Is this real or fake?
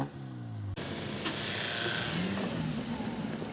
real